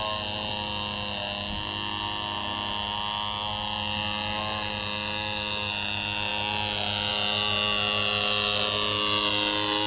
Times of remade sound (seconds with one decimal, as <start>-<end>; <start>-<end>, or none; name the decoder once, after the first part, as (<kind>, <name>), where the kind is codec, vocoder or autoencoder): none